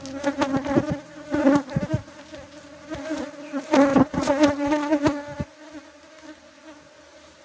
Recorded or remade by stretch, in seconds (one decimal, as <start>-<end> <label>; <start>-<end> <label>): 0.0-3.9 recorded; 3.9-5.0 remade; 5.0-7.4 recorded